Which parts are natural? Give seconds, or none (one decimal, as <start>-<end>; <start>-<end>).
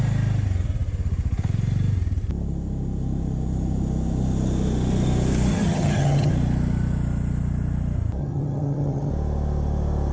0.0-5.5; 6.3-8.2; 9.1-10.1